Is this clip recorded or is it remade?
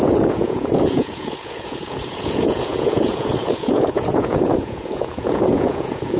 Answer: remade